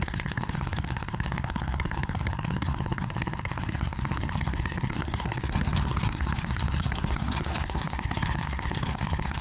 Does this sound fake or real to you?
fake